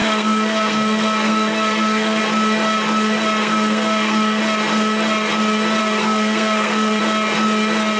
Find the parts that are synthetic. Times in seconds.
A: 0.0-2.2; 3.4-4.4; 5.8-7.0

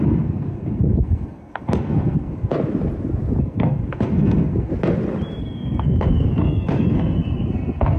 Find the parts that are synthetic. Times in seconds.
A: 0.0-2.5; 3.4-4.7; 5.4-8.0

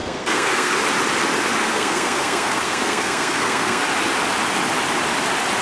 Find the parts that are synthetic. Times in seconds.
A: 0.0-0.7; 1.6-3.8

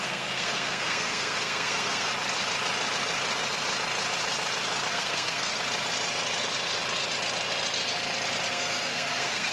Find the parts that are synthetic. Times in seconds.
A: 0.0-2.1; 4.9-5.5; 8.5-9.5

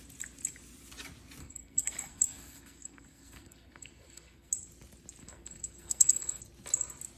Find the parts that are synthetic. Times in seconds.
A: 1.4-4.5; 5.2-6.4

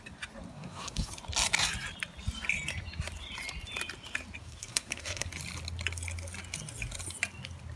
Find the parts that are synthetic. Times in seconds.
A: 0.5-1.1; 4.4-5.3

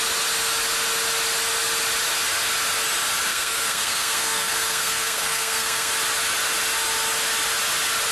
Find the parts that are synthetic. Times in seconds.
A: 3.3-5.9

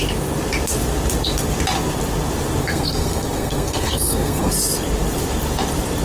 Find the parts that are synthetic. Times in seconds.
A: 2.6-4.5